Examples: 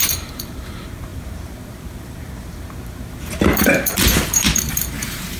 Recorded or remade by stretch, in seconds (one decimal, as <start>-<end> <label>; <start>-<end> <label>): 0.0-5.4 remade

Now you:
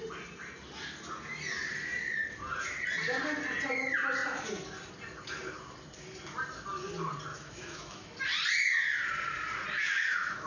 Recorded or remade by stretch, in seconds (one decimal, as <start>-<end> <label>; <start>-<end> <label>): 0.0-7.3 recorded; 7.3-8.1 remade; 8.1-9.8 recorded; 9.8-10.5 remade

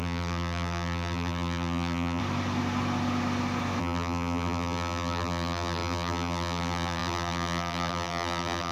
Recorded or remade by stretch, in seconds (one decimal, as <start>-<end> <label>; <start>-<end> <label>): 0.0-2.2 remade; 2.2-3.8 recorded; 3.8-8.7 remade

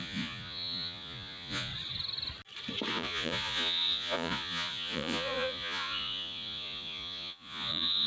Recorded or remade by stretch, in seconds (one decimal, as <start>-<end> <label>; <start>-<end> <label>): 0.0-1.7 remade; 1.7-2.9 recorded; 2.9-8.1 remade

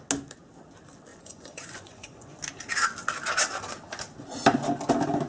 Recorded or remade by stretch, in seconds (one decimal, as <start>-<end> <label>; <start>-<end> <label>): 0.0-1.1 recorded; 1.1-2.4 remade; 2.4-5.3 recorded